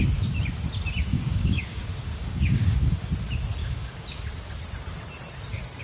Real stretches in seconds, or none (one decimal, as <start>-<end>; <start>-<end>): 0.0-1.1; 3.1-3.6; 4.2-5.8